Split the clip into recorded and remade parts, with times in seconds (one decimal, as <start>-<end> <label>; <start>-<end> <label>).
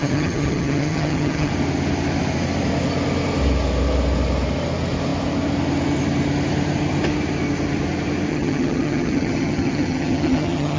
0.0-1.5 remade; 1.5-8.3 recorded; 8.3-10.8 remade